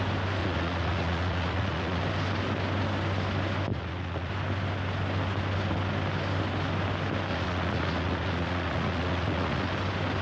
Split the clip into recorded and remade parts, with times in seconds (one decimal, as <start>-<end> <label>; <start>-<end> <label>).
0.0-0.4 recorded; 0.4-2.0 remade; 2.0-3.7 recorded; 3.7-4.3 remade; 4.3-7.3 recorded; 7.3-9.7 remade; 9.7-10.2 recorded